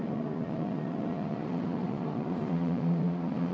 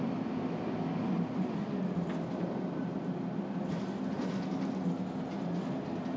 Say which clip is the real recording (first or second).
second